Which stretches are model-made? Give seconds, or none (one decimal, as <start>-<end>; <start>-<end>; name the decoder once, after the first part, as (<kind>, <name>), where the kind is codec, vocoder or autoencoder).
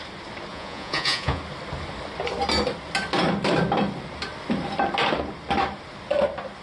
0.5-1.4 (vocoder, Vocos)